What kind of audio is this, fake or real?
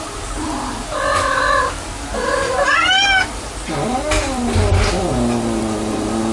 real